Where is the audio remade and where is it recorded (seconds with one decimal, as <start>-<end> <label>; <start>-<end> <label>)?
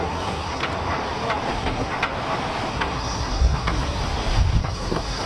0.0-0.6 remade; 0.6-1.5 recorded; 1.5-1.9 remade; 1.9-2.7 recorded; 2.7-4.0 remade; 4.0-4.6 recorded; 4.6-5.3 remade